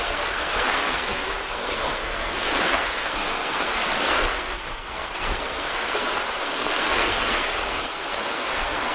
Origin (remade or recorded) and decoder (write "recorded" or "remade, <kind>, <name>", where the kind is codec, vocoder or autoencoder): remade, codec, SNAC